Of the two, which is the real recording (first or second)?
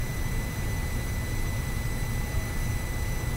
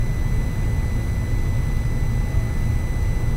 second